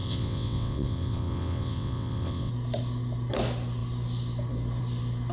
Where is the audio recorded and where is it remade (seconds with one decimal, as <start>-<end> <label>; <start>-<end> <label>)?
0.0-2.5 remade; 2.5-5.3 recorded